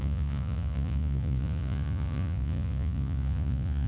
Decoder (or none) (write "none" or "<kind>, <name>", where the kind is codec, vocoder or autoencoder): vocoder, Vocos